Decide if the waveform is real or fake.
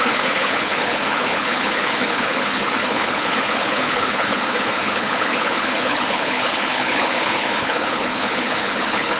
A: fake